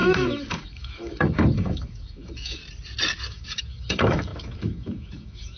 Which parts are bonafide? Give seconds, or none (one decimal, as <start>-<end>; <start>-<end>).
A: 2.6-3.3